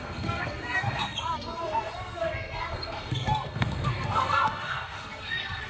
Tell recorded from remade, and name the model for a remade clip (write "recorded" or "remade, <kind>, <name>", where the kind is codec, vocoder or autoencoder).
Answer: remade, codec, SNAC